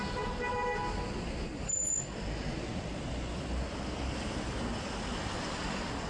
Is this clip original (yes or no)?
yes